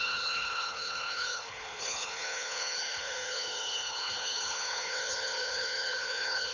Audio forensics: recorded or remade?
remade